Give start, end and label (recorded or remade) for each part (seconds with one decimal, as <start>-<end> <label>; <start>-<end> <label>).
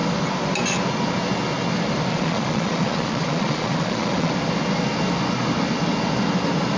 0.0-2.1 recorded; 2.1-4.3 remade; 4.3-6.8 recorded